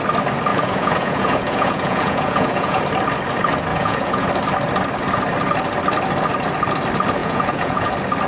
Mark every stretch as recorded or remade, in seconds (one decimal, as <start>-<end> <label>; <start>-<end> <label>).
0.0-0.5 recorded; 0.5-2.8 remade; 2.8-3.7 recorded; 3.7-4.3 remade; 4.3-7.2 recorded; 7.2-7.9 remade; 7.9-8.3 recorded